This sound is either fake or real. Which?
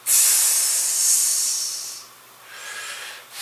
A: real